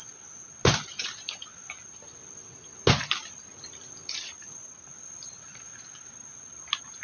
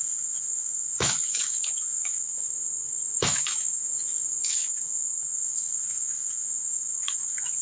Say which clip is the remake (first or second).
second